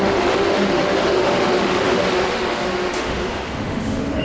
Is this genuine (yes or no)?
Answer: no